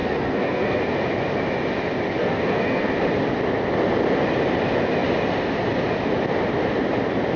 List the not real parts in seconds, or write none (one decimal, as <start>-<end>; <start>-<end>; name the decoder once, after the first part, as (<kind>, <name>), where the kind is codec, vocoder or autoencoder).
0.0-0.8 (codec, SNAC); 2.2-2.9